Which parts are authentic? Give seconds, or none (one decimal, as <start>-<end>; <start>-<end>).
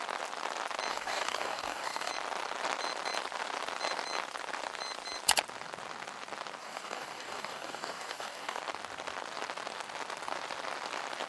0.0-0.9; 2.1-6.6; 8.6-11.3